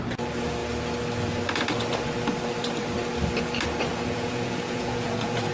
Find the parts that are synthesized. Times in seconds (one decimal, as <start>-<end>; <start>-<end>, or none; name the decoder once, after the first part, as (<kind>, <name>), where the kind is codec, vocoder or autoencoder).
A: 3.9-5.5 (vocoder, Vocos)